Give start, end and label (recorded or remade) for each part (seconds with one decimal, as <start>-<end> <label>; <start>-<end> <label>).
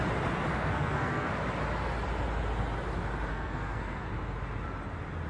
0.0-0.5 recorded; 0.5-1.3 remade; 1.3-3.3 recorded; 3.3-4.1 remade; 4.1-5.3 recorded